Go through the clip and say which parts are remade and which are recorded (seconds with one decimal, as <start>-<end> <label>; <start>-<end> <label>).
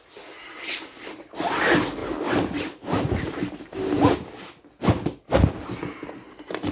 0.0-6.7 recorded